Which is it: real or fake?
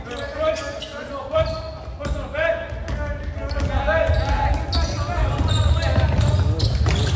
real